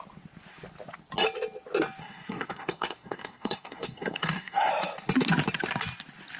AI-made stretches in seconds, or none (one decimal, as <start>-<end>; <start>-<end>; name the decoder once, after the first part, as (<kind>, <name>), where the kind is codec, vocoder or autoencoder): 2.0-4.7 (codec, SNAC)